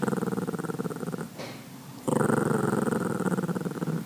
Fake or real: real